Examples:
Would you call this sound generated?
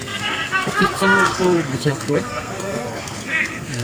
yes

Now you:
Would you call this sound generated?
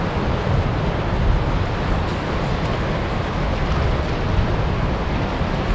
no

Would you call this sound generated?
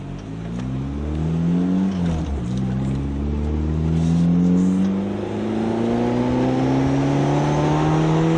no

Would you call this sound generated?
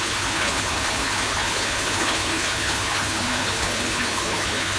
yes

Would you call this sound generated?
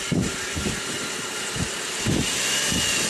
no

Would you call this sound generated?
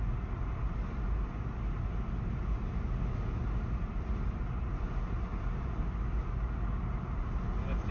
no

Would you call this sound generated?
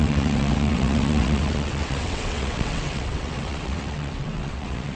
yes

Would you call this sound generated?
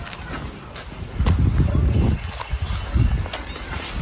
no